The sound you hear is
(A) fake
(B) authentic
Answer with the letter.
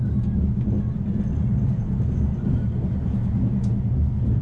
B